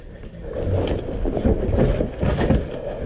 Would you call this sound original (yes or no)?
yes